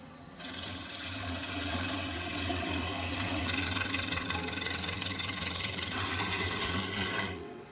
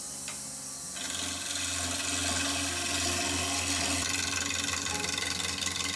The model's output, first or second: first